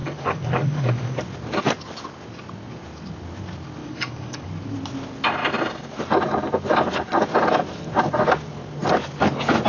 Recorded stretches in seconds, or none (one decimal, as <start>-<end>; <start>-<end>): 1.2-3.8; 4.5-9.7